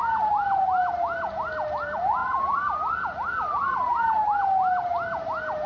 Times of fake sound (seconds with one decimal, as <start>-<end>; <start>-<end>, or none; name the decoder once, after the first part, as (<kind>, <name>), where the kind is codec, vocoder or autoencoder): none